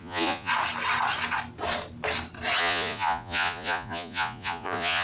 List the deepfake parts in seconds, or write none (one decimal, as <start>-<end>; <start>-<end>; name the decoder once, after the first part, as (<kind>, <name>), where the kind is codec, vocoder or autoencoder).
0.0-0.5 (vocoder, Vocos); 2.6-5.0